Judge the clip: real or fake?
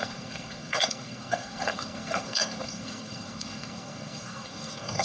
fake